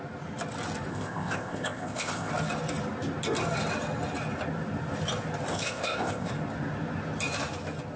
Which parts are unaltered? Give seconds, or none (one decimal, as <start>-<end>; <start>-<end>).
0.0-0.9; 2.3-5.5; 6.3-8.0